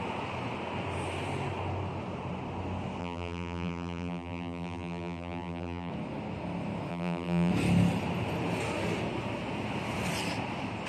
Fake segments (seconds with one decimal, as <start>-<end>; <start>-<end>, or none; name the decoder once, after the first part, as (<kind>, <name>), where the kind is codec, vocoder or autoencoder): 3.0-5.9 (vocoder, BigVGAN v2); 6.9-7.5